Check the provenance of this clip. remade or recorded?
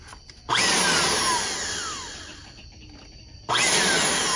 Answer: recorded